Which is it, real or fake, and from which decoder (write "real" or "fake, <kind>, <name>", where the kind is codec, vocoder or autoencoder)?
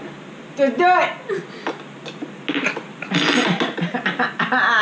real